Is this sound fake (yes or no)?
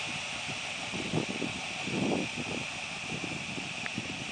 no